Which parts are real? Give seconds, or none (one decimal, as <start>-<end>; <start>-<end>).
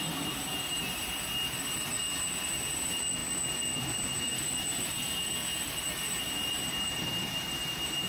none